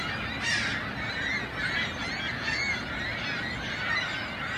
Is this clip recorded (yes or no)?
yes